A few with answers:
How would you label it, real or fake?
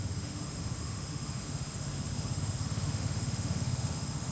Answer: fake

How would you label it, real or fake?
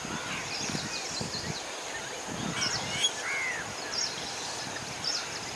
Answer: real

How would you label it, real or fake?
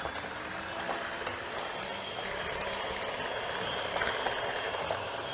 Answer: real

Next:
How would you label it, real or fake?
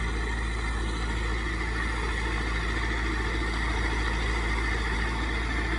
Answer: real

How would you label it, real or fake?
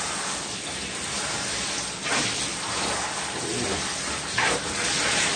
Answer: real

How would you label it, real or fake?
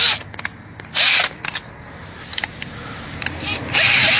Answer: real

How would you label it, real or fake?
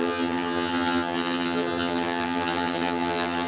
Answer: fake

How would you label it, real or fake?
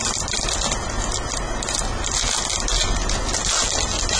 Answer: real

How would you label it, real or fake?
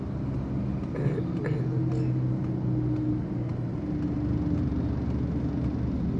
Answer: real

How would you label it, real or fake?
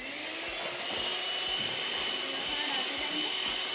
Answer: real